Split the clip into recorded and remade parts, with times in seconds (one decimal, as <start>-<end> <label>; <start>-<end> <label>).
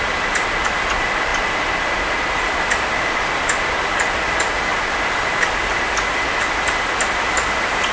0.0-7.9 recorded